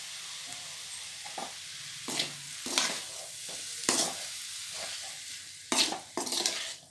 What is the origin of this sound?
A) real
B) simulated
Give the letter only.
A